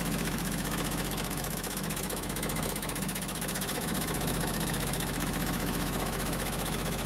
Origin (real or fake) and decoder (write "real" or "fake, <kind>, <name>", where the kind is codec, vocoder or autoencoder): fake, autoencoder, DAC-VAE